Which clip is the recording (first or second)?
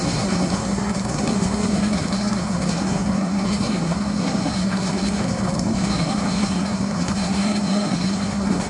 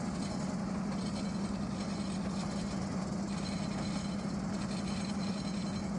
second